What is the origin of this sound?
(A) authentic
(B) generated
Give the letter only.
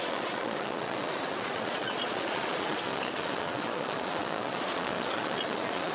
B